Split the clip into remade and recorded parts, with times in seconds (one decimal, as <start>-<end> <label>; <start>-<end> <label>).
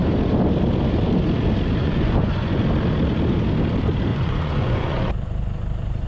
0.0-1.8 recorded; 1.8-2.6 remade; 2.6-4.1 recorded; 4.1-5.1 remade; 5.1-6.1 recorded